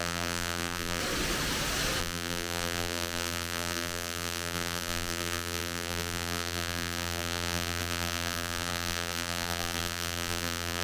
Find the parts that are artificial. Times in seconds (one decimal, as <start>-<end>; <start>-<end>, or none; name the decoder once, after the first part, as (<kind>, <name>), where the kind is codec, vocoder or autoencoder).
0.0-1.0 (vocoder, BigVGAN v2); 2.0-10.8

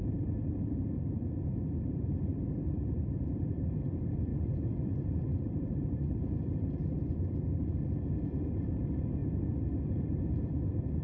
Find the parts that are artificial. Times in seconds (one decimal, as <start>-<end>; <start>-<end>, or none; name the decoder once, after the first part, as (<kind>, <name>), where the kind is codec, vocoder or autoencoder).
0.0-9.2 (vocoder, BigVGAN v2); 10.2-11.0

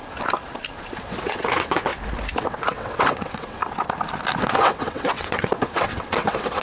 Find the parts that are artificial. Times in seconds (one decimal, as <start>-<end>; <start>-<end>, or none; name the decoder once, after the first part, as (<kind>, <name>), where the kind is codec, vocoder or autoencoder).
1.0-1.9 (vocoder, WaveNeXt); 2.4-3.6; 4.6-6.6

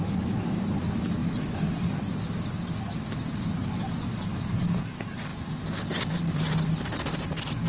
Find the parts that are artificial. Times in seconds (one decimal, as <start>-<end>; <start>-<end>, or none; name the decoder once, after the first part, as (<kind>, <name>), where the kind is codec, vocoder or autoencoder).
none

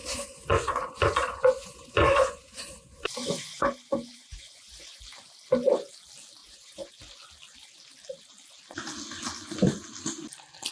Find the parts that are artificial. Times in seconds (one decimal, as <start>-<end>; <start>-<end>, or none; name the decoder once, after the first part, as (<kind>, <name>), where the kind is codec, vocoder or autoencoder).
0.0-5.0 (vocoder, Vocos); 6.4-6.9

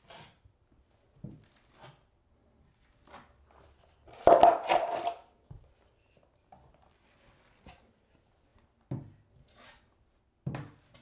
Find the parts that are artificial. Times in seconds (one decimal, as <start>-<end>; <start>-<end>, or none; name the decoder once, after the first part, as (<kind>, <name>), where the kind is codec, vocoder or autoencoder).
none